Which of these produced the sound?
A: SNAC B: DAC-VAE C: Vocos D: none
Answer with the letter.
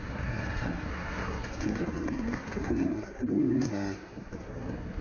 A